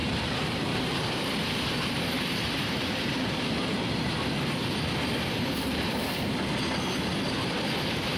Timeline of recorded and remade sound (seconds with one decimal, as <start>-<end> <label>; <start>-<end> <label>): 0.0-4.1 remade; 4.1-8.2 recorded